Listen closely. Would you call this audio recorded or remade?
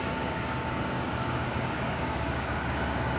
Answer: remade